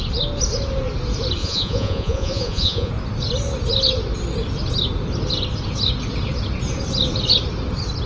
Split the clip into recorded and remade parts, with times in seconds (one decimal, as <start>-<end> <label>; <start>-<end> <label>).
0.0-1.4 recorded; 1.4-2.9 remade; 2.9-8.1 recorded